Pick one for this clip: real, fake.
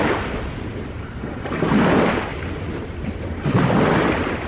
real